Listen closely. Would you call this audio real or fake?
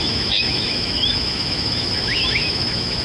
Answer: fake